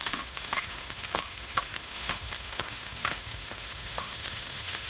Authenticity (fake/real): fake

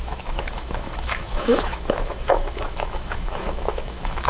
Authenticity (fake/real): fake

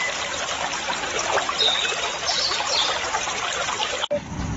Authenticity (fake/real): real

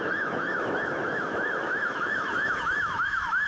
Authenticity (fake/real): fake